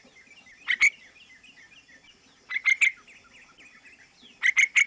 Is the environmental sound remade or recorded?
recorded